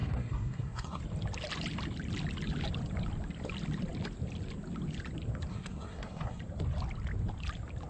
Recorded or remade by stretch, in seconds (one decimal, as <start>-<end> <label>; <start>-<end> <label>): 0.0-1.0 remade; 1.0-5.5 recorded; 5.5-6.4 remade; 6.4-7.9 recorded